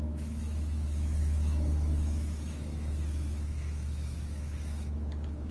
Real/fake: fake